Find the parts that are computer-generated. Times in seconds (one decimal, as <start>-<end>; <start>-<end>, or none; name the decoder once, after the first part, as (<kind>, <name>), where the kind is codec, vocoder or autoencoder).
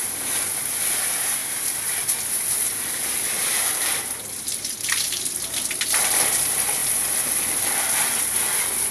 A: 1.4-5.4 (vocoder, BigVGAN v2); 6.8-8.9